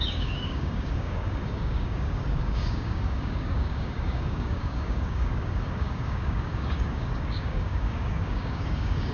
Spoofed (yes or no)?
yes